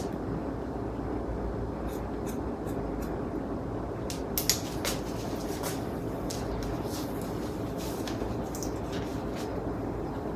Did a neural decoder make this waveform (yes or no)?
no